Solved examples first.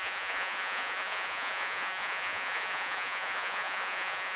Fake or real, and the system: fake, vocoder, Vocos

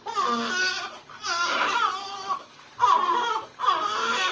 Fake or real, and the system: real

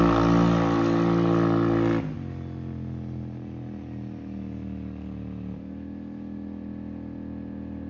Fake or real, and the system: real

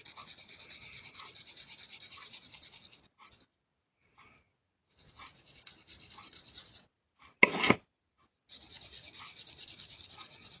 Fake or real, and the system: real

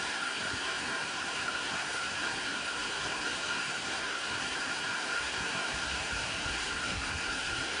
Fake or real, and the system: fake, codec, SNAC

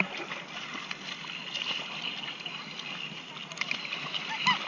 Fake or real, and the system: real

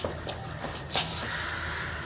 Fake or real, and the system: real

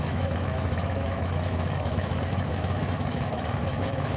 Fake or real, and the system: fake, autoencoder, DAC-VAE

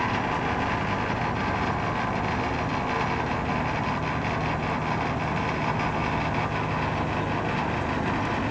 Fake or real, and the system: real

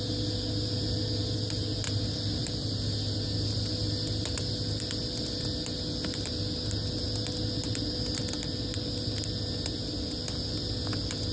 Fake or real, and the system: real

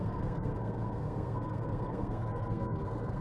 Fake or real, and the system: fake, codec, SNAC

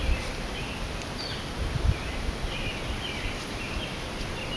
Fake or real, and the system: real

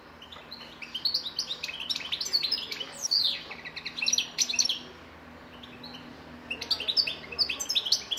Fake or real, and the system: real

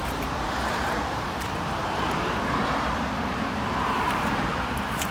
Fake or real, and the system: fake, vocoder, BigVGAN v2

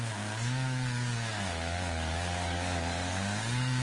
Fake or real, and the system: fake, codec, DAC